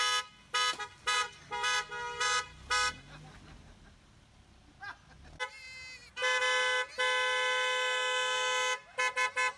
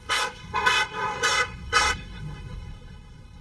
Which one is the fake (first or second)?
second